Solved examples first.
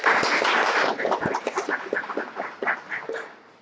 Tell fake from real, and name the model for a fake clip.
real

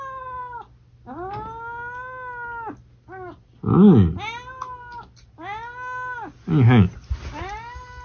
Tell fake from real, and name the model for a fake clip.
real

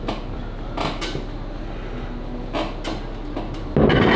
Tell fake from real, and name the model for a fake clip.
real